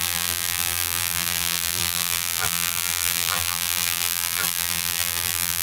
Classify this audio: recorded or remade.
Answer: remade